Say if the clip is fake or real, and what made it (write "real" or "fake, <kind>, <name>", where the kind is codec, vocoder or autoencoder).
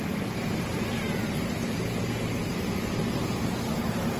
fake, vocoder, BigVGAN v2